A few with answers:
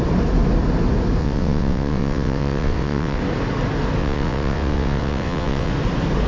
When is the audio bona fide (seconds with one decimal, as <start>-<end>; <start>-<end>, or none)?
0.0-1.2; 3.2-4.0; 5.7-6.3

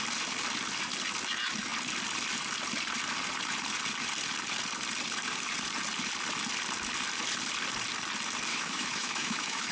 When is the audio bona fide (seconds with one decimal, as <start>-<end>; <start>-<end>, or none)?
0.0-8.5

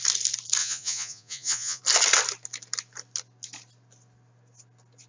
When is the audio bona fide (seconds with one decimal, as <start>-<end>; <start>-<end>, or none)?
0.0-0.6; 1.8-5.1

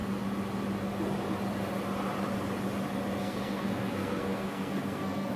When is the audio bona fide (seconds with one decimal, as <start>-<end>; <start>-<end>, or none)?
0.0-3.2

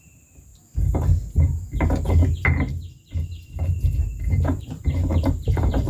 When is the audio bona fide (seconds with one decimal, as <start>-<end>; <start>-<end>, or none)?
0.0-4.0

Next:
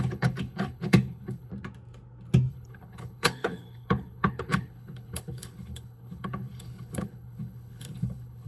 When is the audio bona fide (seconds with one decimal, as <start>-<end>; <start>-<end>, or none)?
1.5-2.5